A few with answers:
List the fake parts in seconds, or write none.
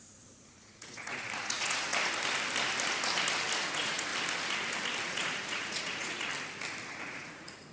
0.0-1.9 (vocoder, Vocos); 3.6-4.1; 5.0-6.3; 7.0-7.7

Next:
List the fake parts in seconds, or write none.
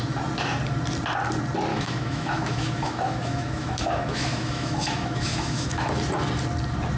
1.7-5.9 (autoencoder, DAC-VAE)